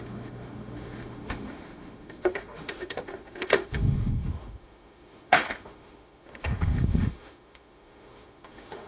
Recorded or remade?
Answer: remade